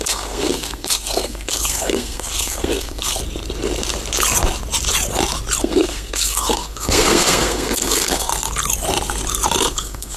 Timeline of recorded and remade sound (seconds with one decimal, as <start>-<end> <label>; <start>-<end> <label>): 0.0-3.2 remade; 3.2-5.6 recorded; 5.6-8.3 remade; 8.3-9.6 recorded; 9.6-10.2 remade